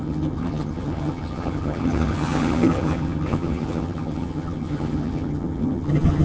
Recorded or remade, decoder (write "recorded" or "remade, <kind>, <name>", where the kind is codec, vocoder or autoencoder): remade, vocoder, HiFi-GAN